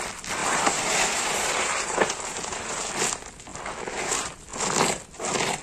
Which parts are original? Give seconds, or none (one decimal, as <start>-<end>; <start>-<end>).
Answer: 0.0-0.4; 2.9-5.6